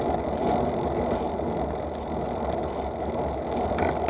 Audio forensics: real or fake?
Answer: real